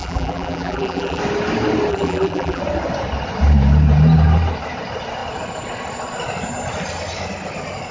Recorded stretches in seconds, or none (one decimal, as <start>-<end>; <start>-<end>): 1.2-1.9; 2.6-7.9